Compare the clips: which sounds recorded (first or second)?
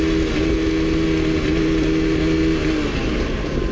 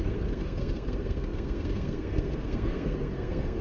first